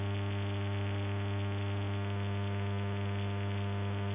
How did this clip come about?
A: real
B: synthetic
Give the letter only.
A